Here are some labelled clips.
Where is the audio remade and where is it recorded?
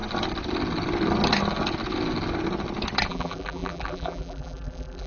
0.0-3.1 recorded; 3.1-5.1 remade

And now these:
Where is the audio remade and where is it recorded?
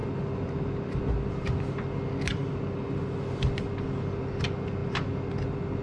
0.0-5.8 recorded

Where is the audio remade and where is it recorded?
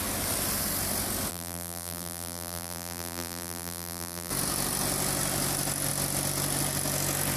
0.0-1.3 recorded; 1.3-4.3 remade; 4.3-7.4 recorded